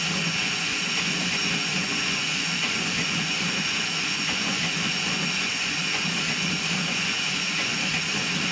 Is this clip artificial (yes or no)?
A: yes